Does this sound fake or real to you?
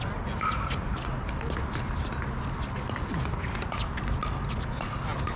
real